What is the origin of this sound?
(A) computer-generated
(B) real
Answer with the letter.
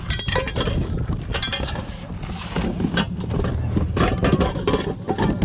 B